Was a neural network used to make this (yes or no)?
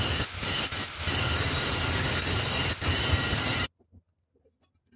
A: no